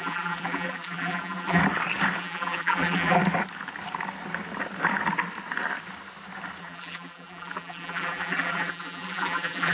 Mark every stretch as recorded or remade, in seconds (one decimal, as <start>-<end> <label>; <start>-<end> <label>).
0.0-1.6 remade; 1.6-2.2 recorded; 2.2-3.2 remade; 3.2-6.6 recorded; 6.6-9.7 remade